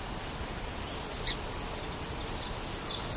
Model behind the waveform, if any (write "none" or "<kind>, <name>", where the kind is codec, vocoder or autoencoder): none